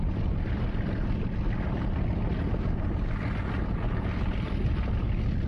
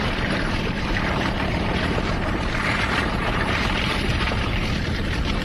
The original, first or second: first